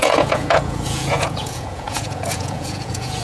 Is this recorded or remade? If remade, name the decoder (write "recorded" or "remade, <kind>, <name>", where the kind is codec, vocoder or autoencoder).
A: remade, vocoder, Vocos